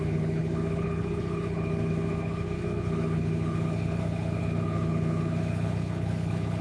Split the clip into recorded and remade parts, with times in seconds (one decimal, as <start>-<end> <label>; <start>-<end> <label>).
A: 0.0-6.6 remade